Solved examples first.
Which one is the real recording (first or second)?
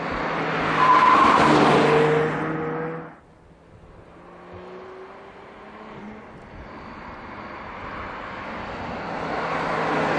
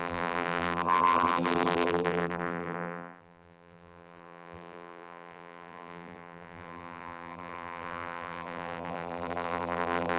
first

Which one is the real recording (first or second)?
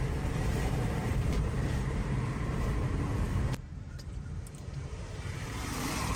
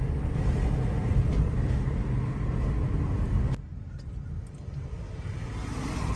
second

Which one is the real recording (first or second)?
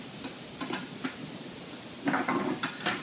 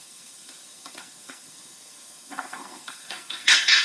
first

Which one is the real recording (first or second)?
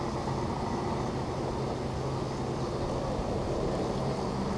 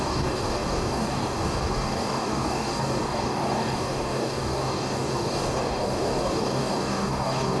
first